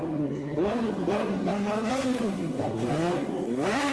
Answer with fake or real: fake